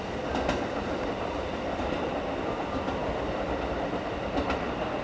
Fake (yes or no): yes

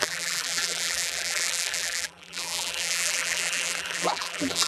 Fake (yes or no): yes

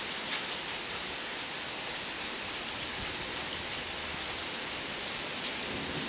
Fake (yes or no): no